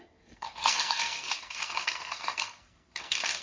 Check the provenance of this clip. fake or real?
fake